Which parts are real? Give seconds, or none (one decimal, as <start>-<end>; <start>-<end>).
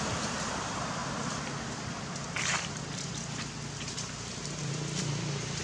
none